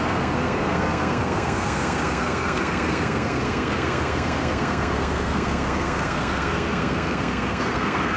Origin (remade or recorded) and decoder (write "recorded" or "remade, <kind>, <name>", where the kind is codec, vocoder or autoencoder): remade, codec, SNAC